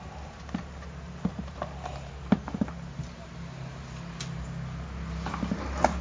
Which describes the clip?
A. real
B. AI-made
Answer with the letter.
A